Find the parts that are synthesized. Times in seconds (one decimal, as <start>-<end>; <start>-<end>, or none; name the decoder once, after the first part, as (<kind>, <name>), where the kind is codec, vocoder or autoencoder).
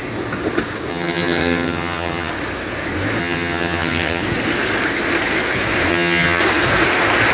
0.9-2.3 (vocoder, HiFi-GAN); 3.2-4.2; 5.9-6.4